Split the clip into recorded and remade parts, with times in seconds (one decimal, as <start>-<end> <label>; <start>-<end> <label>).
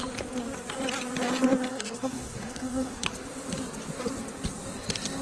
0.0-1.7 recorded; 1.7-3.1 remade; 3.1-5.2 recorded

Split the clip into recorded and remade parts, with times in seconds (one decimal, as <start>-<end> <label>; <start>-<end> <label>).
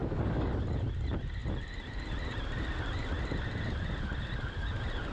0.0-0.5 remade; 0.5-5.1 recorded